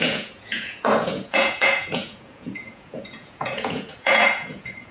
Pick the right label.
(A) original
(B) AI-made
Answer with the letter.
B